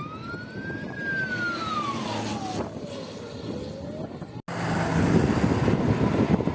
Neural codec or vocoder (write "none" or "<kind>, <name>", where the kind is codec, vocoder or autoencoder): none